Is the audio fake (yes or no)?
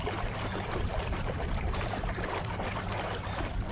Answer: yes